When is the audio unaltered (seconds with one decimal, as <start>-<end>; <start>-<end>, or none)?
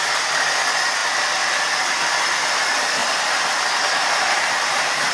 0.0-3.0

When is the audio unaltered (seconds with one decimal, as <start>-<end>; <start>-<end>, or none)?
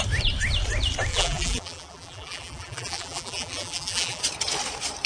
0.0-1.1; 4.2-5.1